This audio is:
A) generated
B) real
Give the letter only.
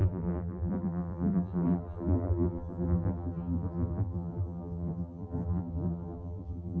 A